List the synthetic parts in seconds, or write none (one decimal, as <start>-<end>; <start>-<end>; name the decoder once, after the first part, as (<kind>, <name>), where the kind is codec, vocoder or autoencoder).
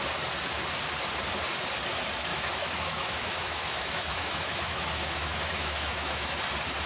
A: 2.3-6.4 (autoencoder, DAC-VAE)